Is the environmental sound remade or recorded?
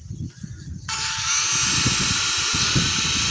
recorded